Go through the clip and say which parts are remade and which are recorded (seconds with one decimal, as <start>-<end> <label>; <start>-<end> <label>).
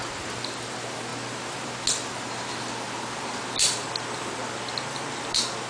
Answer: 0.0-5.7 recorded